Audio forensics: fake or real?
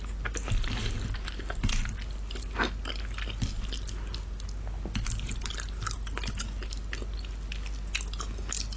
real